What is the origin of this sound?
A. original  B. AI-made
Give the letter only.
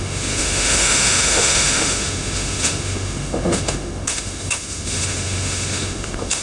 B